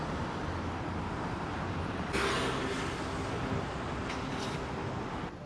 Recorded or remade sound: recorded